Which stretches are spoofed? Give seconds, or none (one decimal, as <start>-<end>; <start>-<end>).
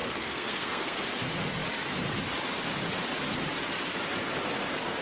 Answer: 0.0-1.0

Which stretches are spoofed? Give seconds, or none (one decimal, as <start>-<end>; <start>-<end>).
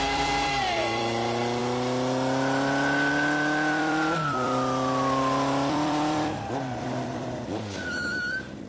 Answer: 0.0-1.6; 3.1-8.7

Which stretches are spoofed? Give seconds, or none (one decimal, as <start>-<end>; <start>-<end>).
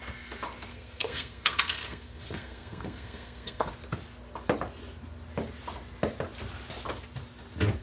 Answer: 0.7-3.7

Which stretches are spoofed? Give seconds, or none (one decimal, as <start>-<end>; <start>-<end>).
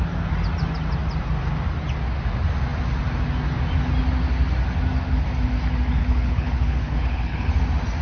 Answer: 6.0-7.5